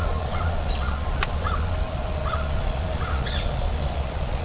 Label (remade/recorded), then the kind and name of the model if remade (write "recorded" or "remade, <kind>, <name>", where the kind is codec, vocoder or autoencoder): remade, vocoder, Vocos